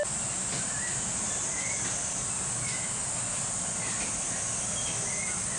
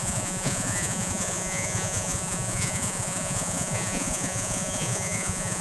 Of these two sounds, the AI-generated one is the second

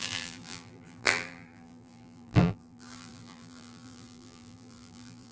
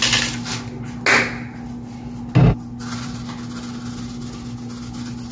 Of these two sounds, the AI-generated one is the first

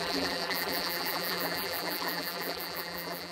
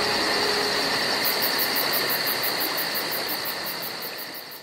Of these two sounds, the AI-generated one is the first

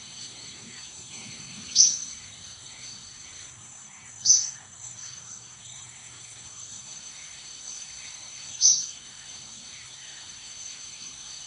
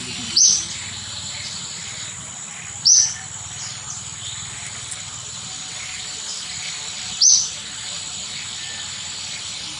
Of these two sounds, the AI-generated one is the first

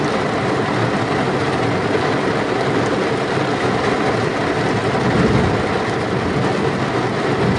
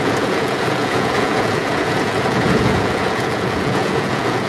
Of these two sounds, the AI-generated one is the second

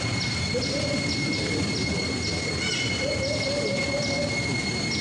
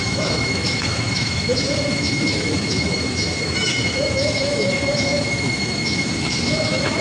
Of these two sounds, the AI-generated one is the second